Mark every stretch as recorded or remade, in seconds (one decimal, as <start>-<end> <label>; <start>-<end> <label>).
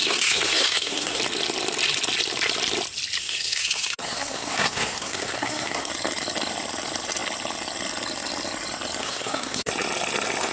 0.0-1.2 remade; 1.2-3.2 recorded; 3.2-5.9 remade; 5.9-9.0 recorded; 9.0-9.7 remade; 9.7-10.5 recorded